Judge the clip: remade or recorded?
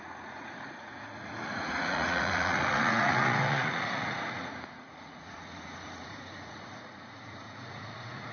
remade